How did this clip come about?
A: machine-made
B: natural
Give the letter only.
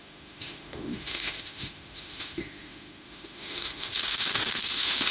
A